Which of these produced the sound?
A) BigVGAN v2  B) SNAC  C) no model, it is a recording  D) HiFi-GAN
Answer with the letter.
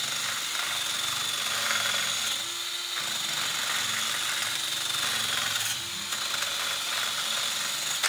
C